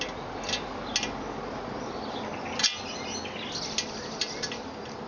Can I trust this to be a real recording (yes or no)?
yes